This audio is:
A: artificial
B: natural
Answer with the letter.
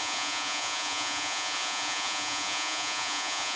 A